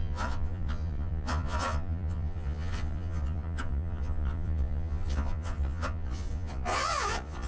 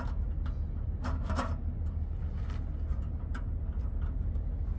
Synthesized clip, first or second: first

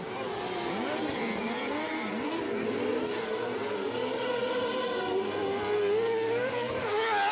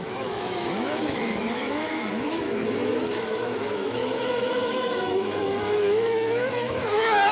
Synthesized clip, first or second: second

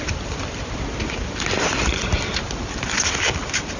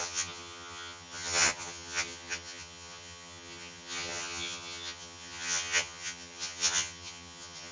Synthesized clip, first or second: second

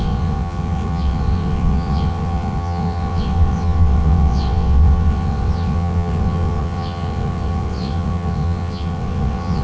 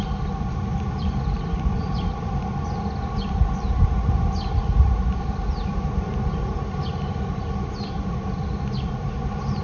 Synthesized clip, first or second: first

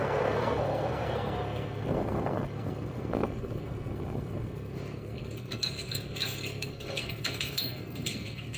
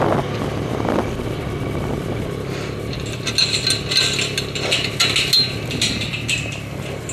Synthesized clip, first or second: first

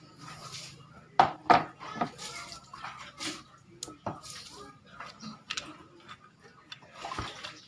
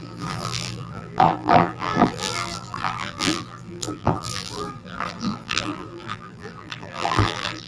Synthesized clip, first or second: second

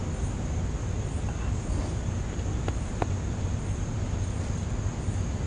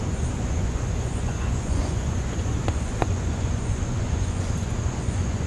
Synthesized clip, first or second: second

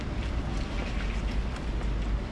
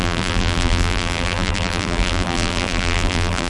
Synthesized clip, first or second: second